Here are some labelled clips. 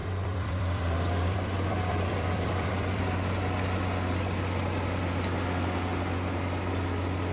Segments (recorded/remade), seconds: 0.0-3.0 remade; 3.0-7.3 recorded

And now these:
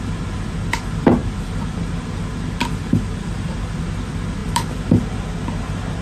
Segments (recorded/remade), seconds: 0.0-6.0 recorded

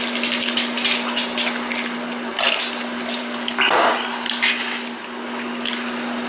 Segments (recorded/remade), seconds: 0.0-6.3 recorded

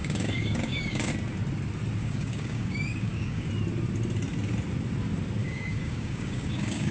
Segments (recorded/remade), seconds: 0.0-1.1 remade; 1.1-2.0 recorded; 2.0-3.5 remade; 3.5-5.4 recorded; 5.4-6.9 remade

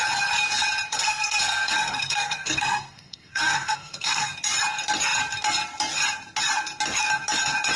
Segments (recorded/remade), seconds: 0.0-0.9 recorded; 0.9-4.3 remade; 4.3-7.8 recorded

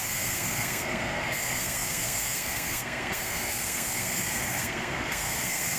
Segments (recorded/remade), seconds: 0.0-5.8 remade

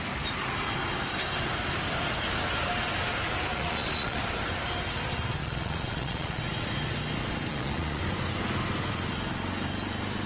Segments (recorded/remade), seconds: 0.0-3.5 recorded; 3.5-4.2 remade; 4.2-5.4 recorded; 5.4-6.4 remade; 6.4-7.5 recorded; 7.5-8.0 remade; 8.0-10.3 recorded